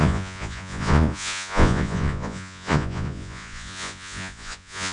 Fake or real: fake